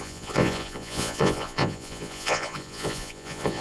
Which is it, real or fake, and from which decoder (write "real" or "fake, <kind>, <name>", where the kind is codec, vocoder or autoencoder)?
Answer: fake, vocoder, Vocos